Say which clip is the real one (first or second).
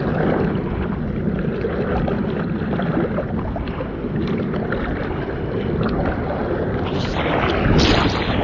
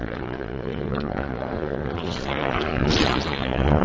first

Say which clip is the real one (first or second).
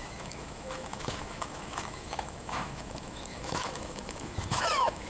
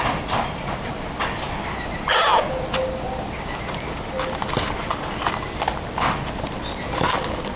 second